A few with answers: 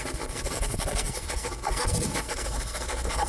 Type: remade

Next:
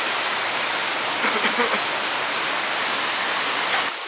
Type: recorded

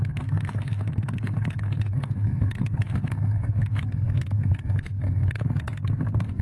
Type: remade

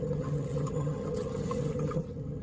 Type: remade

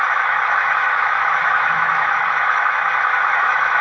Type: remade